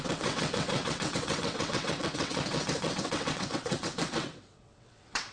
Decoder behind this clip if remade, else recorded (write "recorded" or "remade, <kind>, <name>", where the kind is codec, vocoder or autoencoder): remade, vocoder, WaveNeXt